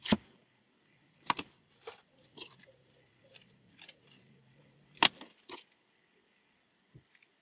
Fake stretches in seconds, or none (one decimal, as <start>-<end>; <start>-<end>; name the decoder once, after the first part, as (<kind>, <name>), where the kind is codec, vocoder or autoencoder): 0.4-4.8 (vocoder, BigVGAN v2)